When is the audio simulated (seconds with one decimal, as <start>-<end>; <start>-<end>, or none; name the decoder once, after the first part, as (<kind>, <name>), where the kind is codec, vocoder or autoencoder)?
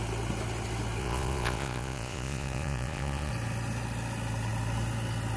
1.0-3.3 (vocoder, Vocos)